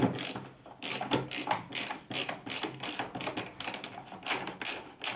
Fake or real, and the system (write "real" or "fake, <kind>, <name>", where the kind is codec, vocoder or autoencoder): real